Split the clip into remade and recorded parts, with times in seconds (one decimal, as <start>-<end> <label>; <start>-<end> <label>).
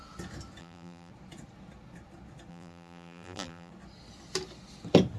0.0-0.6 recorded; 0.6-1.1 remade; 1.1-2.5 recorded; 2.5-3.7 remade; 3.7-5.2 recorded